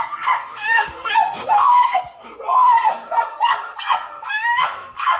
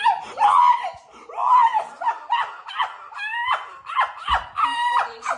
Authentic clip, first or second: second